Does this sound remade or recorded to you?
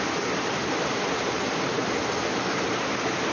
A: recorded